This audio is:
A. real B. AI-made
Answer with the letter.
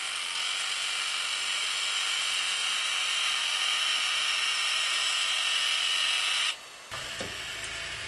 A